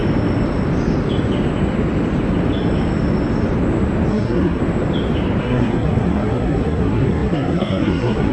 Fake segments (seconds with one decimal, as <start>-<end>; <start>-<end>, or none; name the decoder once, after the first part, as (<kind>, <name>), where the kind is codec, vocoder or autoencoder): 4.1-4.6 (codec, SNAC); 5.4-8.3